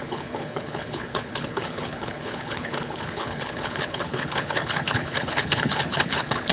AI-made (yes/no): yes